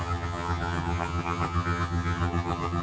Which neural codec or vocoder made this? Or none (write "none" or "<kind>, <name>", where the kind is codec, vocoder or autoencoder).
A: vocoder, HiFi-GAN